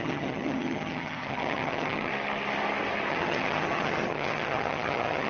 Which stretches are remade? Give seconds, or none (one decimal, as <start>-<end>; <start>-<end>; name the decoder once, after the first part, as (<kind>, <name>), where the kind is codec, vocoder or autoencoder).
0.0-2.1 (vocoder, HiFi-GAN); 3.1-5.3